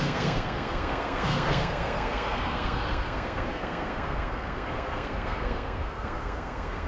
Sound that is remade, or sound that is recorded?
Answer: remade